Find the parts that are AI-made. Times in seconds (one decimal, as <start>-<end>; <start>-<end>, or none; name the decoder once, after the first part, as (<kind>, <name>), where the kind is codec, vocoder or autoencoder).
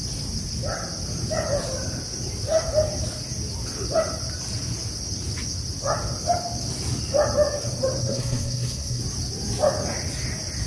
8.0-9.0 (codec, SNAC)